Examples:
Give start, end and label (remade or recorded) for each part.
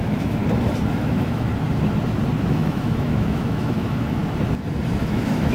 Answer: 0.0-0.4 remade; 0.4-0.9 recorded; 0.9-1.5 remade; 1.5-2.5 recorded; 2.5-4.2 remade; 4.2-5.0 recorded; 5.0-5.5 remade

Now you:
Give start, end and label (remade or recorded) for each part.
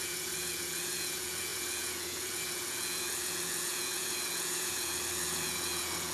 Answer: 0.0-6.1 remade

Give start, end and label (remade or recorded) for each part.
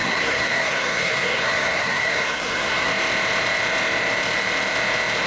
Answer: 0.0-2.9 remade; 2.9-5.3 recorded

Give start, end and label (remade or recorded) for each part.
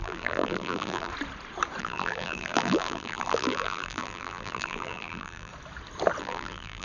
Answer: 0.0-1.1 remade; 1.1-1.8 recorded; 1.8-5.5 remade; 5.5-6.2 recorded; 6.2-6.8 remade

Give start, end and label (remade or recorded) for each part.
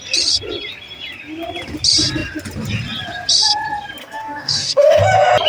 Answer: 0.0-4.0 recorded; 4.0-5.0 remade; 5.0-5.5 recorded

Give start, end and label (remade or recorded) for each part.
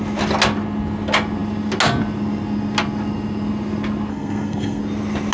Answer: 0.0-4.1 recorded; 4.1-4.8 remade; 4.8-5.3 recorded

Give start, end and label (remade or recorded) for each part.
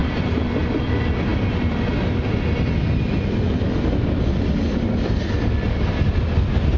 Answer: 0.0-6.8 recorded